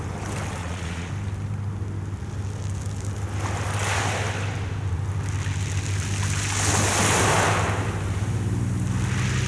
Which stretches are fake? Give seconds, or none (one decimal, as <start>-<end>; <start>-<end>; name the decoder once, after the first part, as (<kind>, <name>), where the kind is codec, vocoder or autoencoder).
0.6-1.1 (vocoder, Vocos)